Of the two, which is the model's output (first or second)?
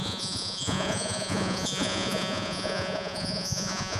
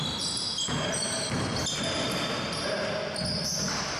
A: first